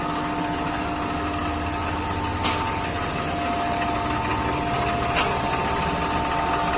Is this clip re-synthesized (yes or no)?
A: no